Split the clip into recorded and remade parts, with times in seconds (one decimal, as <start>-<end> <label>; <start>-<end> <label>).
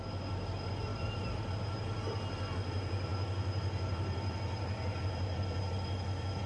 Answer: 0.0-0.9 recorded; 0.9-1.5 remade; 1.5-6.5 recorded